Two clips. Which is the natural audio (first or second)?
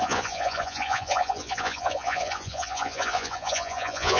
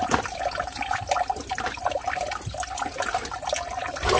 second